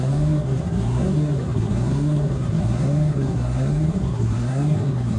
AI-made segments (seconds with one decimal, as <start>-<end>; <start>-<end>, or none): 0.0-5.2